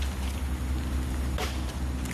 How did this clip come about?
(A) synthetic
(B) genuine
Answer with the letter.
B